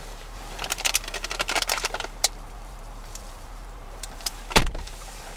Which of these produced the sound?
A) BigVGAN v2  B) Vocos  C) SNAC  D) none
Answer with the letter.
A